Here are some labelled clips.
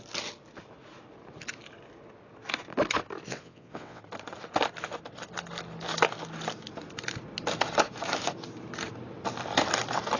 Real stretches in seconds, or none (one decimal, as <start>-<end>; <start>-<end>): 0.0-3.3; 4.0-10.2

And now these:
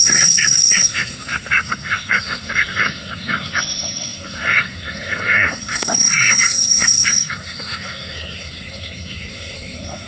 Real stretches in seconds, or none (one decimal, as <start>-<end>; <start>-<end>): none

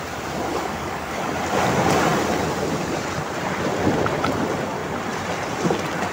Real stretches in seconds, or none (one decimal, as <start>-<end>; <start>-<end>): 0.0-0.5; 1.2-6.1